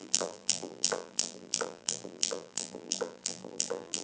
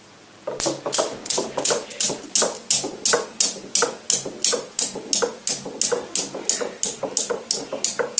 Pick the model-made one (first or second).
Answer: first